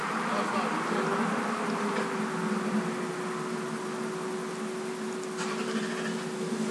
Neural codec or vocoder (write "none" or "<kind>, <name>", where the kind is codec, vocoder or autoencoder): none